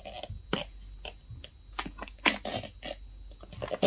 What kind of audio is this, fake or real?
real